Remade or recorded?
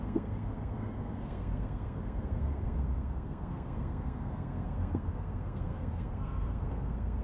remade